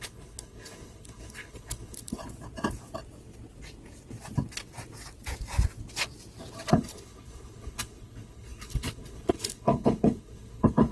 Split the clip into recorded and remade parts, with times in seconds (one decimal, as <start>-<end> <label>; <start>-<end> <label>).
0.0-2.2 remade; 2.2-6.7 recorded; 6.7-10.9 remade